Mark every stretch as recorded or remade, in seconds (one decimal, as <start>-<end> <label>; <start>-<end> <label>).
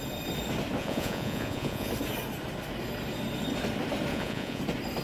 0.0-0.8 recorded; 0.8-1.9 remade; 1.9-4.1 recorded; 4.1-4.6 remade; 4.6-5.0 recorded